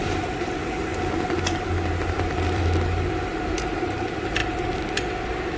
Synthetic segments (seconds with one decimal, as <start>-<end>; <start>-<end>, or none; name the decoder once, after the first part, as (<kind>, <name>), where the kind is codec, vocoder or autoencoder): 0.0-0.9 (vocoder, BigVGAN v2); 2.1-5.6